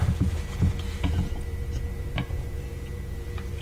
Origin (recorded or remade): remade